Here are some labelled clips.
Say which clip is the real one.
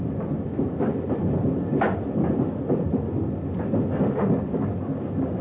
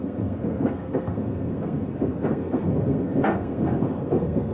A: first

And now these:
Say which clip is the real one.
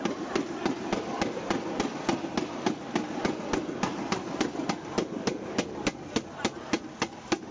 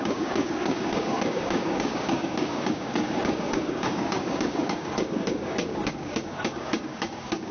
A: first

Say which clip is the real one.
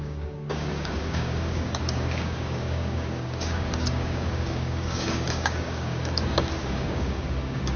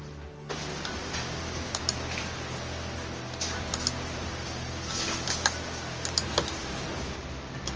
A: second